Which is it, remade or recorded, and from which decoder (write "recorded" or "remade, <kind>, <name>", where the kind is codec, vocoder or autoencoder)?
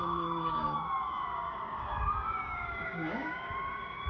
remade, codec, DAC